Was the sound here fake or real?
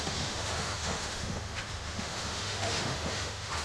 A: fake